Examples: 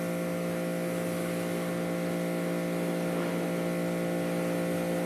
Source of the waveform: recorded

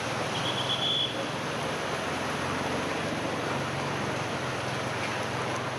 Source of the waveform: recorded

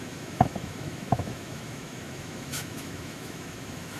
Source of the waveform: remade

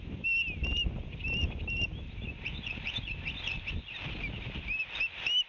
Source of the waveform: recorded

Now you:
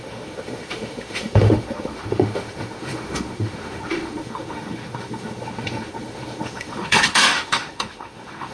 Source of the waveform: remade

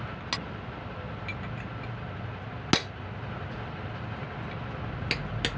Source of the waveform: recorded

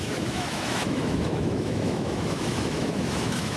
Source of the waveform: remade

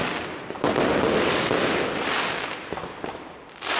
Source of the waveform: recorded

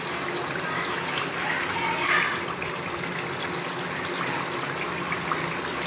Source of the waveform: recorded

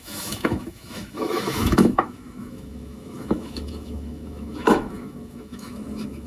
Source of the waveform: remade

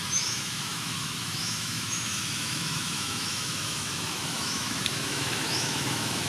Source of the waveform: remade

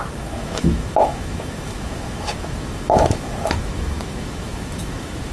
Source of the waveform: remade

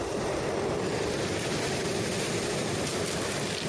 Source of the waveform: recorded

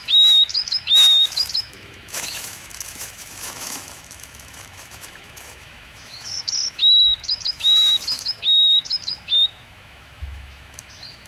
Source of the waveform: remade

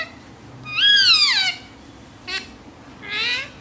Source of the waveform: recorded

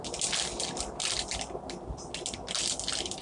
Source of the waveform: recorded